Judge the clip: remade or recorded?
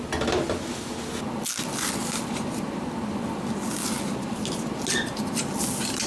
recorded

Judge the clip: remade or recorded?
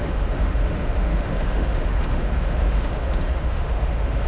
remade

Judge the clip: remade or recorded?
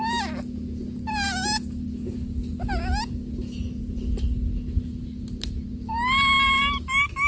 recorded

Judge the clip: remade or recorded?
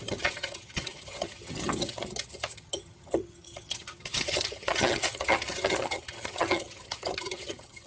remade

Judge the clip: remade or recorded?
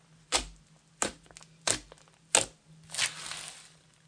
recorded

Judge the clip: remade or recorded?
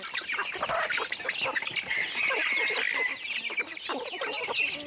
recorded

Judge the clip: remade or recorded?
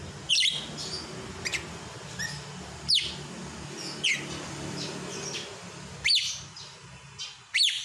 remade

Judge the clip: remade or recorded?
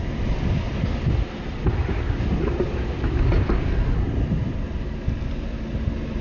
recorded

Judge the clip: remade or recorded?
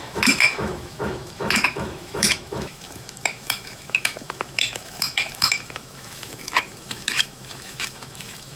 remade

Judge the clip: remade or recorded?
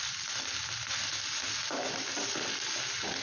recorded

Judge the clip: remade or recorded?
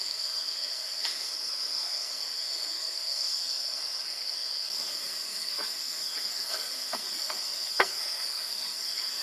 remade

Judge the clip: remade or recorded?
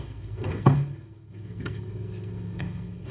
remade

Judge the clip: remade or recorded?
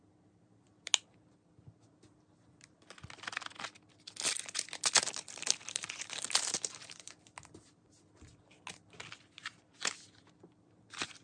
recorded